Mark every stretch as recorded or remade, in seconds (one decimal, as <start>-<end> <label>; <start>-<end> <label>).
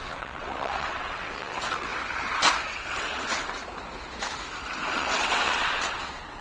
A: 0.0-1.9 remade; 1.9-3.0 recorded; 3.0-3.6 remade; 3.6-4.9 recorded; 4.9-6.4 remade